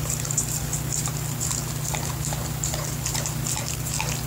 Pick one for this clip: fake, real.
real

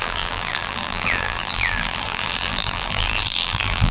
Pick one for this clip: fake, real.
fake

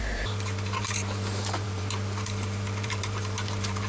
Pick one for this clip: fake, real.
fake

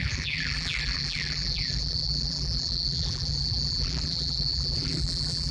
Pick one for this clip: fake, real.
fake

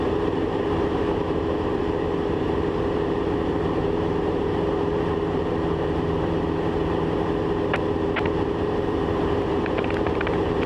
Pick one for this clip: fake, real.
fake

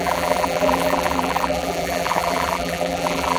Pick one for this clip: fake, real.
fake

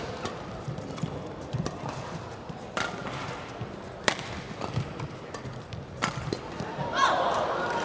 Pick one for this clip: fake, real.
fake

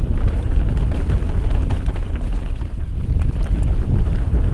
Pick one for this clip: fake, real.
fake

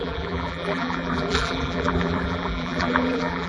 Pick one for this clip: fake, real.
fake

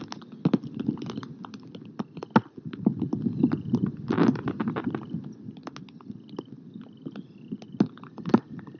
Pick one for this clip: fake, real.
real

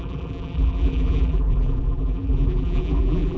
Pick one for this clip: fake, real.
fake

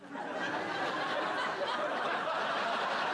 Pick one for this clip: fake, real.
real